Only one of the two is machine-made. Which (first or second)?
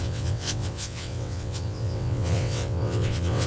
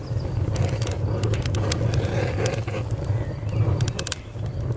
first